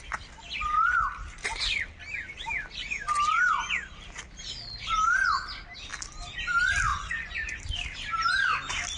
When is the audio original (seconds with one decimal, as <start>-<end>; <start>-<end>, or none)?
0.0-6.9; 7.6-9.0